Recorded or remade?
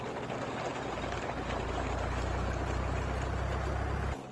recorded